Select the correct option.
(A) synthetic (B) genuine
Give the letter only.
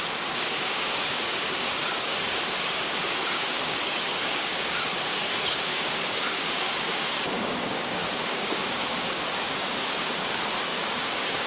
A